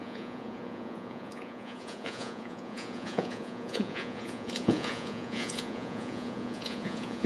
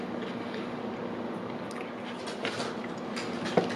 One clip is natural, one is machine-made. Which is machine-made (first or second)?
first